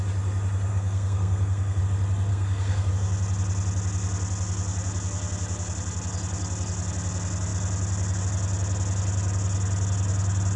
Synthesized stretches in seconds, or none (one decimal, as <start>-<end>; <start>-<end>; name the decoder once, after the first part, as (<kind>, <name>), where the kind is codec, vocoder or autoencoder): 0.7-1.8 (codec, SNAC); 2.3-2.9